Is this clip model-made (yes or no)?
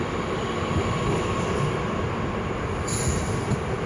no